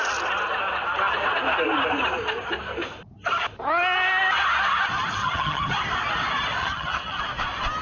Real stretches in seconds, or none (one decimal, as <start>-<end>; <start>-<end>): 0.0-5.2; 5.7-6.6; 7.2-7.8